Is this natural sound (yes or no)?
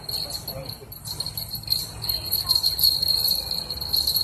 yes